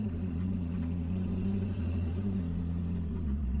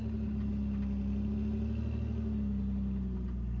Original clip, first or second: second